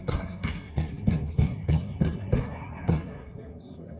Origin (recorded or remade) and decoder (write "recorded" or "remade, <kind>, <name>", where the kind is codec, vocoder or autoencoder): remade, codec, SNAC